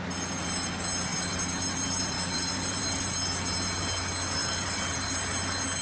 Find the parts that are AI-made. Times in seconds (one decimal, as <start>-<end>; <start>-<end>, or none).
1.1-3.0; 4.4-5.1